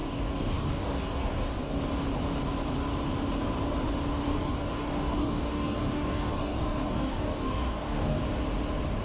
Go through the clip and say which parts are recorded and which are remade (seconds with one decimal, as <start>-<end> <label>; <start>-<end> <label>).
0.0-1.8 remade; 1.8-4.2 recorded; 4.2-8.2 remade; 8.2-9.0 recorded